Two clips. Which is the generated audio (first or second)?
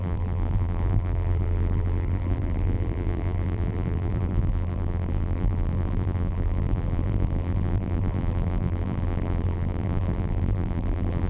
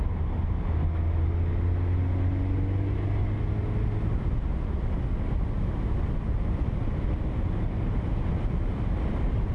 first